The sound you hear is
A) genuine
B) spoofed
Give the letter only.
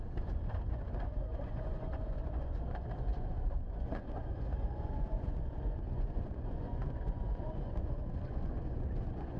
B